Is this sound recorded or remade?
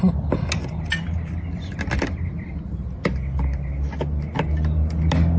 recorded